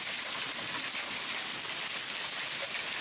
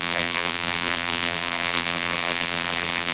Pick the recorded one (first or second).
first